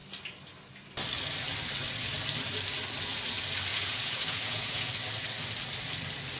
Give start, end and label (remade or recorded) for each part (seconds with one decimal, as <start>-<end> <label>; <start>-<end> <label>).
0.0-3.7 recorded; 3.7-4.9 remade; 4.9-6.4 recorded